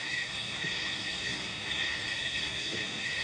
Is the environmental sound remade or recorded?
remade